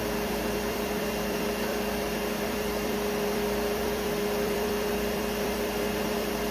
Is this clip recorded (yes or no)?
no